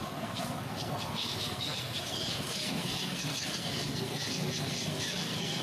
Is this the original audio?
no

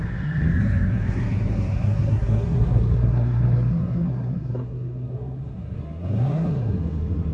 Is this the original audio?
no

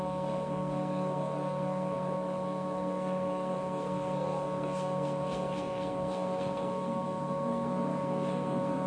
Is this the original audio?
no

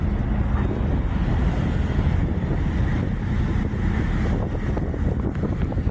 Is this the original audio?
yes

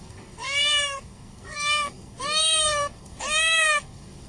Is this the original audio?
no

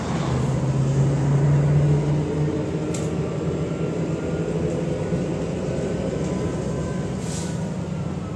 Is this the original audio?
yes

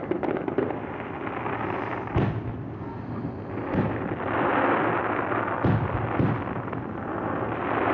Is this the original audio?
yes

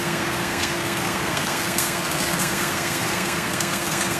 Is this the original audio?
no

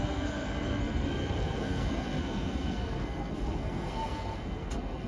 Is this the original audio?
no